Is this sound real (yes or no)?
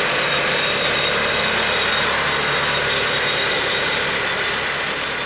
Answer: yes